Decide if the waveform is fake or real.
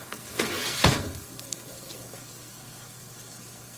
fake